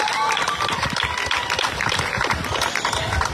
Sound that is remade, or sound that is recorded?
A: recorded